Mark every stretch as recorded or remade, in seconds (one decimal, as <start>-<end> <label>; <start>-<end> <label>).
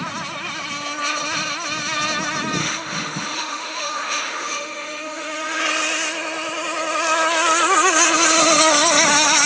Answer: 0.0-2.6 recorded; 2.6-5.6 remade; 5.6-9.5 recorded